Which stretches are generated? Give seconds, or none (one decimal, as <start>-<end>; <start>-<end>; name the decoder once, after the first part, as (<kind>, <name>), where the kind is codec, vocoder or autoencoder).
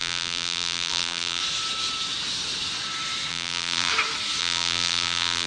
0.0-1.4 (vocoder, BigVGAN v2); 3.3-3.9; 4.4-5.5